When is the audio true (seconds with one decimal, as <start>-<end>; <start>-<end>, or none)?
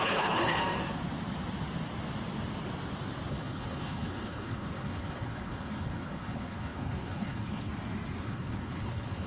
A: 0.6-3.3; 7.7-8.2